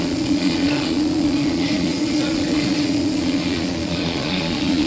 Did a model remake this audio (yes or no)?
yes